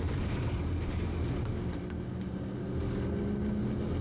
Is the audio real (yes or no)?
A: yes